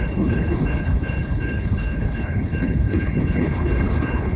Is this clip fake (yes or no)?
yes